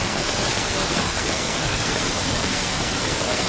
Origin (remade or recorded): remade